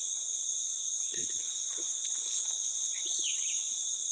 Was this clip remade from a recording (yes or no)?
yes